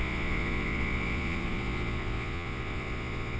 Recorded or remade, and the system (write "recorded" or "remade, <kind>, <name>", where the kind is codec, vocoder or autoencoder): remade, vocoder, Vocos